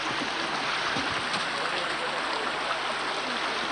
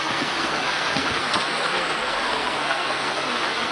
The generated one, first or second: second